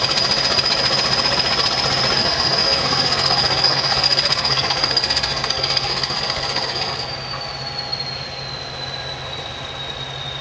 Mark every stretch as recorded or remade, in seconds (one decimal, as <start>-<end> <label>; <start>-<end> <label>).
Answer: 0.0-2.2 recorded; 2.2-7.1 remade; 7.1-10.4 recorded